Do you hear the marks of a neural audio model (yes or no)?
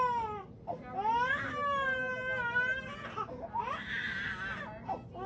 no